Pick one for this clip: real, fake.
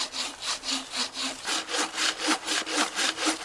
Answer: fake